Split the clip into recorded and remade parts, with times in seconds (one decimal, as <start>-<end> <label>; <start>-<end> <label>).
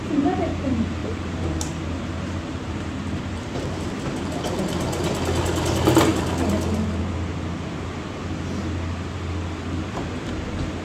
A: 0.0-1.0 recorded; 1.0-4.6 remade; 4.6-10.8 recorded